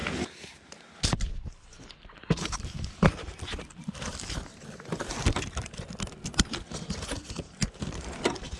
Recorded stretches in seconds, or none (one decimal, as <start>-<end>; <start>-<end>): 0.0-1.1